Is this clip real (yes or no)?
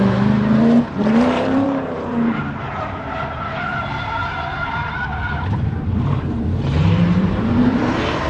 no